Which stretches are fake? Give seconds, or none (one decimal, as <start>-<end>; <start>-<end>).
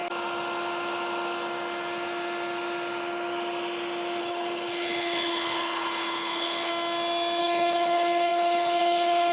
4.2-6.7; 7.4-9.3